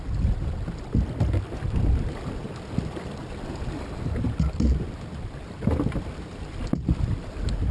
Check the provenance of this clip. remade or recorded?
recorded